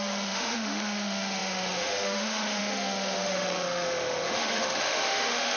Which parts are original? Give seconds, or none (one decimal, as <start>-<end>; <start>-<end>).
none